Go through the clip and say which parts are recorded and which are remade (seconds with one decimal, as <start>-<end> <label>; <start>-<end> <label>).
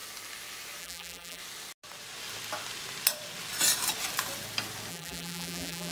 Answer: 0.0-0.8 recorded; 0.8-1.4 remade; 1.4-4.9 recorded; 4.9-5.9 remade